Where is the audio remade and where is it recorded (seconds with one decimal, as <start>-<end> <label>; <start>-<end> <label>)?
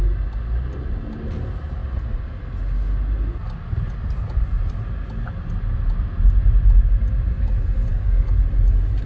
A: 0.0-7.9 recorded; 7.9-8.4 remade; 8.4-9.1 recorded